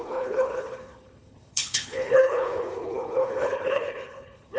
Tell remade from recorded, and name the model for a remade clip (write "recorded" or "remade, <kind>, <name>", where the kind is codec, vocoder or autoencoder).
remade, codec, HILCodec